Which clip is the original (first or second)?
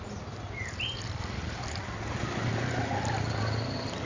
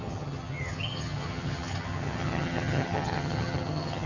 first